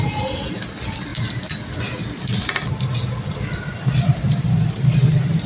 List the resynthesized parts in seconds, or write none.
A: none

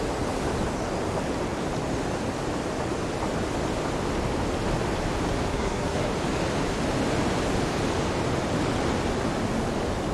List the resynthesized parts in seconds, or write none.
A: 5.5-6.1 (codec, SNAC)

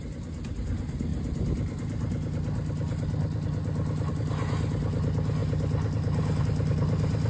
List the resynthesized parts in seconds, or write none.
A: none